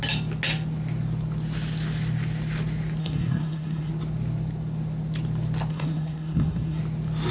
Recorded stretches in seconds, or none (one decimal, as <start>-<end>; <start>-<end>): 0.0-3.0; 3.9-5.7; 6.8-7.3